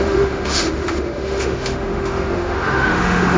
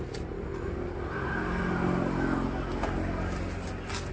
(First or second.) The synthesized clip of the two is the first